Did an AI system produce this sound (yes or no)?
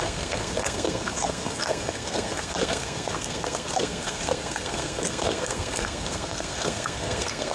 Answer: yes